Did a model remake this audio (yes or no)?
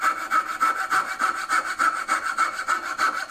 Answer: no